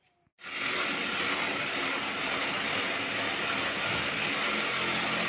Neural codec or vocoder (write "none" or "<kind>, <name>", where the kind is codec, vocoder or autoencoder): none